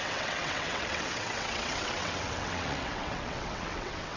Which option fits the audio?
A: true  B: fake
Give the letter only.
B